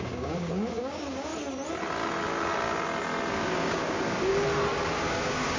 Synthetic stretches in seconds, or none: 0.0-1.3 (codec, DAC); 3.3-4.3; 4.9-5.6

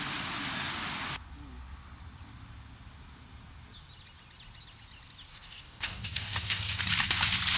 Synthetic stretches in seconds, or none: 5.3-6.8 (codec, DAC)

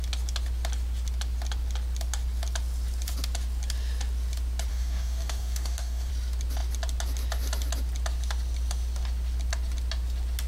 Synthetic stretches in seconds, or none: 4.7-6.1 (codec, DAC)

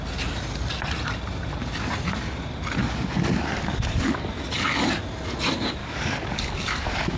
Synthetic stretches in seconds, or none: 2.8-4.3 (codec, DAC); 5.8-7.2

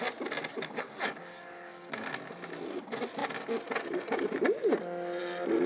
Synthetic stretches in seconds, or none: 0.5-2.1 (codec, DAC)